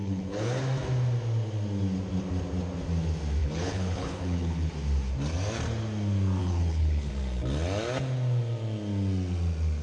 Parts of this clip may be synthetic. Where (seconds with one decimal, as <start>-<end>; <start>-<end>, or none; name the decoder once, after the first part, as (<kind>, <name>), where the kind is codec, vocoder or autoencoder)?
0.0-0.6 (codec, HILCodec); 3.4-4.7; 6.4-7.1